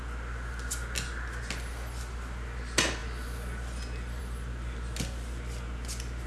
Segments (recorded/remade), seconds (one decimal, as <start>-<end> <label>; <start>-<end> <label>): 0.0-6.3 recorded